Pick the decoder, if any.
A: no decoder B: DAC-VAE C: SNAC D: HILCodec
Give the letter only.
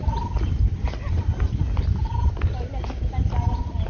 A